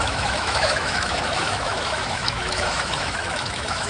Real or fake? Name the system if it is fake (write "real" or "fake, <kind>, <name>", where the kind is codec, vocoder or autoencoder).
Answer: fake, autoencoder, DAC-VAE